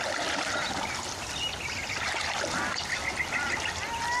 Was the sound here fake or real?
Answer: real